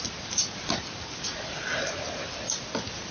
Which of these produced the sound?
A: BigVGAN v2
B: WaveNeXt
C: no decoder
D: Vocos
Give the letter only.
C